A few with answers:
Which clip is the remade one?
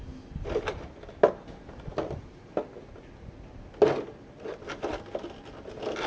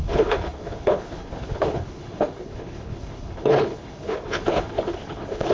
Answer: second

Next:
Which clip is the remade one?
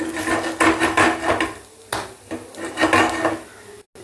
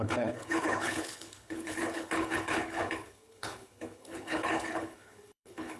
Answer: second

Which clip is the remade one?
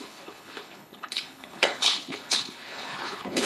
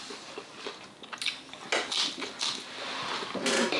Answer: first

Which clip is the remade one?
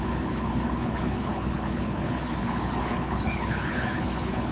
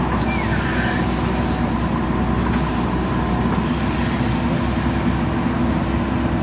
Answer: first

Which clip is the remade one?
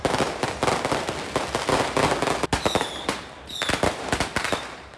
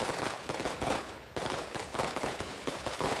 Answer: second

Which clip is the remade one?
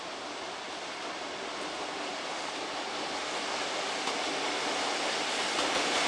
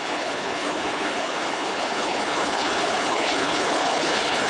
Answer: second